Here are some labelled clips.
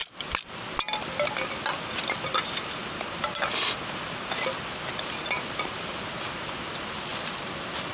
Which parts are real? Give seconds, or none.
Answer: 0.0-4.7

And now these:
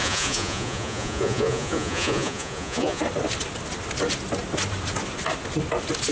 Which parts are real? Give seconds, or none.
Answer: 3.0-6.1